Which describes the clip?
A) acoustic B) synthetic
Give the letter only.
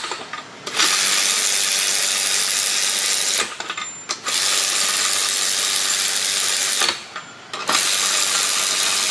A